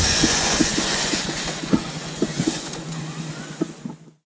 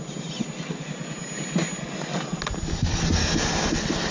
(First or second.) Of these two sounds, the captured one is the second